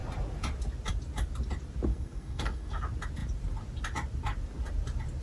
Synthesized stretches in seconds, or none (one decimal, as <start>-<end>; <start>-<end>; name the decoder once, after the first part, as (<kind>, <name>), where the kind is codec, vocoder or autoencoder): 1.9-2.8 (codec, SNAC)